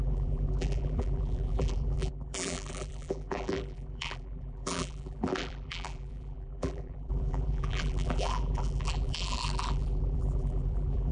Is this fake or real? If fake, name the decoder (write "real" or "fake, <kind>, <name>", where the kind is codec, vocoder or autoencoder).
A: fake, vocoder, BigVGAN v2